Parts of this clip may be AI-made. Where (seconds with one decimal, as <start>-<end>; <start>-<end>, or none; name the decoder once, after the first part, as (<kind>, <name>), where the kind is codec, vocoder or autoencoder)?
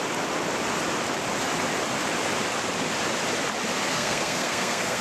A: 3.9-5.0 (codec, SNAC)